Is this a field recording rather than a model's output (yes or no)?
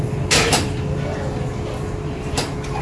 yes